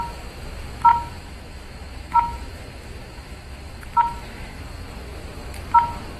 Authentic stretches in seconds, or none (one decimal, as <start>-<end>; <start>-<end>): 0.0-0.9; 4.6-6.2